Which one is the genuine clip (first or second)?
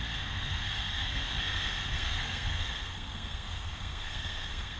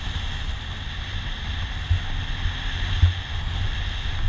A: second